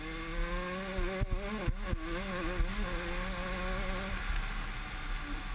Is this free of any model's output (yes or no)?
yes